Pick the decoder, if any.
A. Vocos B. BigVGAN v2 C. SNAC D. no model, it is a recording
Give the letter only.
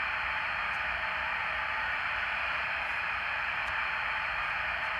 B